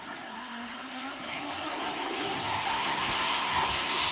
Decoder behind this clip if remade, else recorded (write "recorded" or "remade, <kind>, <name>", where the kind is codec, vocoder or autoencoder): remade, codec, SNAC